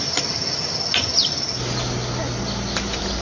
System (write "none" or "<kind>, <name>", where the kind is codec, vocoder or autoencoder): none